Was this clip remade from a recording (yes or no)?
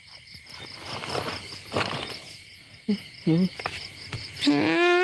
no